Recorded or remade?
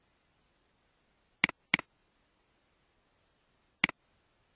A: recorded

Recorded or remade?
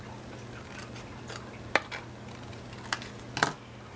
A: recorded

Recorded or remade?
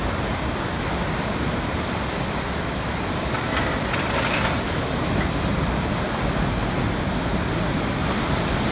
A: recorded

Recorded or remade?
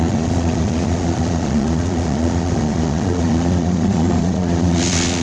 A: remade